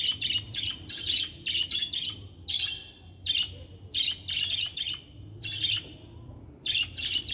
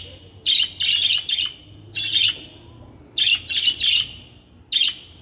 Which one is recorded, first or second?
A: second